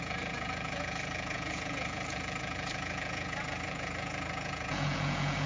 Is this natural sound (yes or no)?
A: no